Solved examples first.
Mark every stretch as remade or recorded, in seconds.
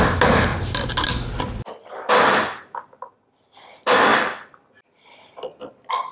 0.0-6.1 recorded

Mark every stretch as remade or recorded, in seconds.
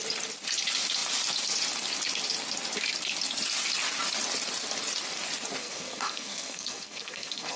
0.0-5.6 recorded; 5.6-7.6 remade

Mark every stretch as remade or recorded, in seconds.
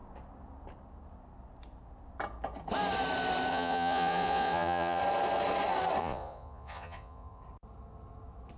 0.0-3.5 recorded; 3.5-5.0 remade; 5.0-6.0 recorded; 6.0-7.4 remade; 7.4-8.6 recorded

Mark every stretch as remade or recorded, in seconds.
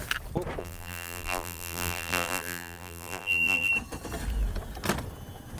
0.0-0.6 recorded; 0.6-3.7 remade; 3.7-5.6 recorded